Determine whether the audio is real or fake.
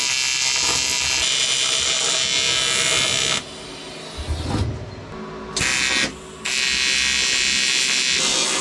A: real